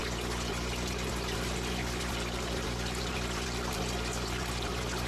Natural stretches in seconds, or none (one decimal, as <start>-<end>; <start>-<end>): 0.0-5.1